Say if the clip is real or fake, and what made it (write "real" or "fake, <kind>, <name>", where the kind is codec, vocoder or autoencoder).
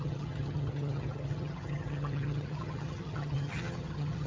fake, vocoder, HiFi-GAN